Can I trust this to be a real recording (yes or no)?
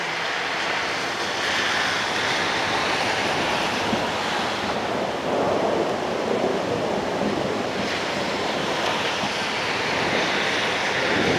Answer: no